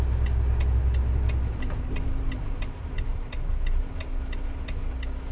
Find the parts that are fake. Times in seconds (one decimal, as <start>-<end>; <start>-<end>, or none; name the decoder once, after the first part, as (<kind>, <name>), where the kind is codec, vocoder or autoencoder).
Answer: none